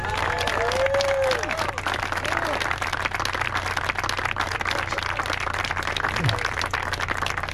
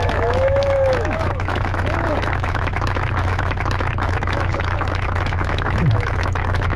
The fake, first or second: second